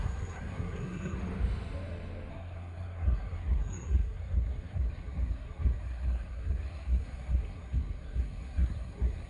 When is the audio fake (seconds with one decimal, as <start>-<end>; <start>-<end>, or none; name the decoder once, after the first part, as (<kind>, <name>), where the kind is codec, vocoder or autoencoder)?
0.0-1.2 (codec, SNAC); 2.3-9.3